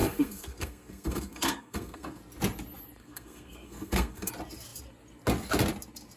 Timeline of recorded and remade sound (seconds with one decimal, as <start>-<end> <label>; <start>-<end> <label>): 0.0-2.2 remade; 2.2-3.0 recorded; 3.0-4.3 remade; 4.3-6.2 recorded